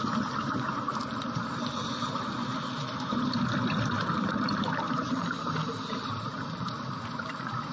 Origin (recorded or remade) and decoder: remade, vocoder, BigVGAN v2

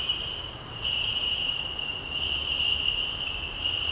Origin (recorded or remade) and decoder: remade, vocoder, BigVGAN v2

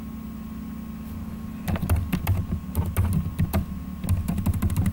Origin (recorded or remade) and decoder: recorded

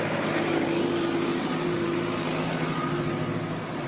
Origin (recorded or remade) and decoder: recorded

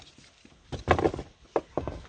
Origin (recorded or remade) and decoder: recorded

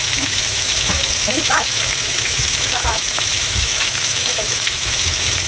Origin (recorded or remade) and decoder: remade, autoencoder, DAC-VAE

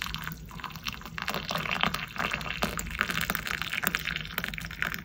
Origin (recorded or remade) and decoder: recorded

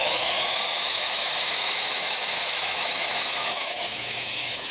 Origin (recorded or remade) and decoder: remade, autoencoder, DAC-VAE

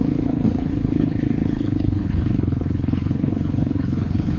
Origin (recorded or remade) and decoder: remade, codec, HILCodec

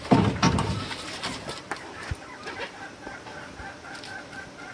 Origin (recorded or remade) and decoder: recorded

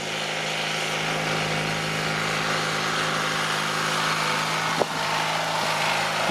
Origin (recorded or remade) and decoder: recorded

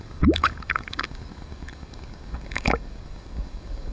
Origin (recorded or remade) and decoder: remade, codec, DAC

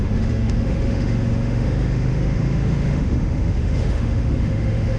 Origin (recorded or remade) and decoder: remade, autoencoder, DAC-VAE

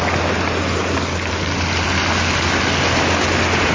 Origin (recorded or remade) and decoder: recorded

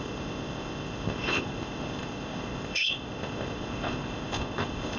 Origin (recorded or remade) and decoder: remade, codec, ZipCodec